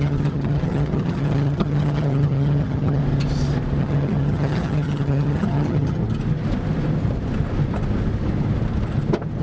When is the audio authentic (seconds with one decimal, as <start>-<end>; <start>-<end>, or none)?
3.0-3.8; 6.0-9.4